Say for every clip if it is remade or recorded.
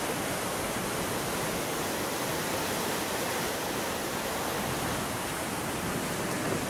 recorded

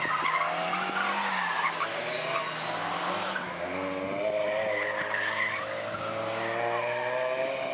recorded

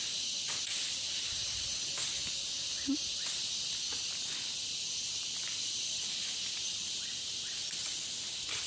recorded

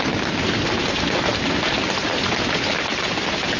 recorded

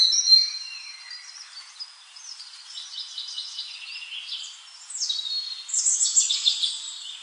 recorded